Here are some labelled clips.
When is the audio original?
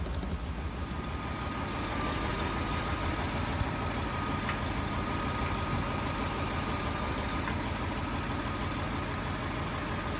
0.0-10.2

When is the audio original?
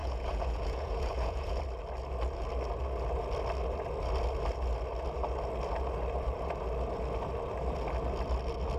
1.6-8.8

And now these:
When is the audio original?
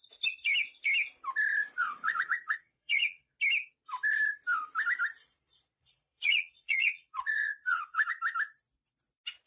0.0-1.6; 3.3-5.2; 8.1-9.5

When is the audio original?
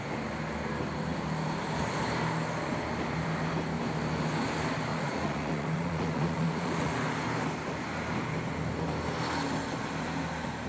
0.0-4.9; 6.9-10.7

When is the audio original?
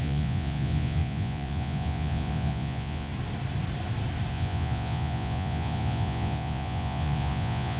3.1-4.3